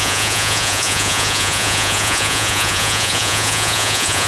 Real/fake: fake